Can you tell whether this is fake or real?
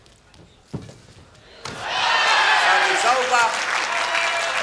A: real